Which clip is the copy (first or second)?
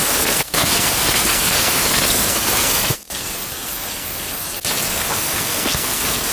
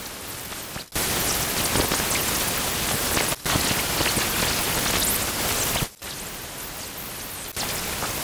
first